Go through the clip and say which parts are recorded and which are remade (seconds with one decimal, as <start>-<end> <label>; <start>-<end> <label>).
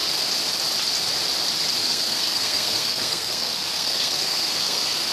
0.0-1.8 recorded; 1.8-5.1 remade